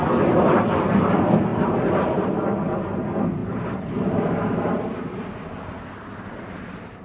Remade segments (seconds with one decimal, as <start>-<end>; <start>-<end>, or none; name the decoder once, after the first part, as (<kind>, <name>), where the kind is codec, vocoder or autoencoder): 1.5-2.3 (vocoder, BigVGAN v2); 3.4-7.0